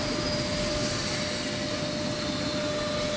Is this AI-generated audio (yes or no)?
no